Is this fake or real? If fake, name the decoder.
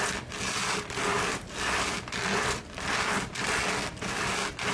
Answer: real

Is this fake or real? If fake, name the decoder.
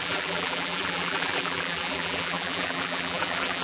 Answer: fake, vocoder, BigVGAN v2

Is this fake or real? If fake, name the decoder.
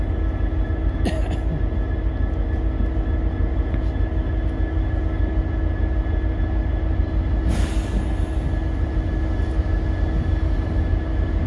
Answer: real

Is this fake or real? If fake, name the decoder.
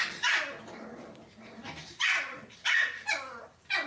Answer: real